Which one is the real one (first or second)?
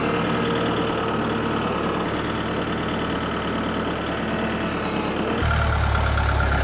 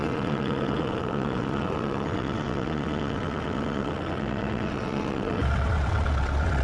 first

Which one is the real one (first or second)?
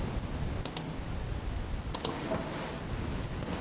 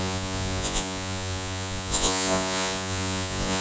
first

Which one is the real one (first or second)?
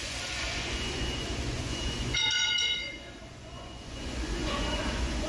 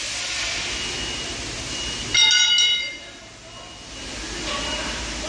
second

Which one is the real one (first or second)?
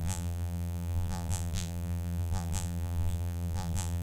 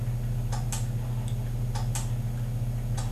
second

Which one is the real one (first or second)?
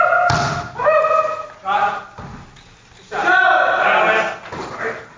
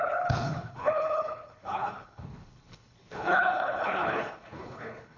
first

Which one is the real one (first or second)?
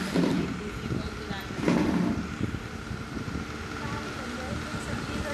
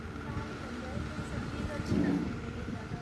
second